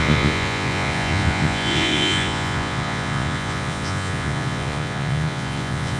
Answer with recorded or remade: remade